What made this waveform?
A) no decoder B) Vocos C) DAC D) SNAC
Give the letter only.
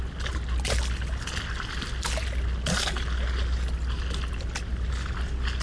A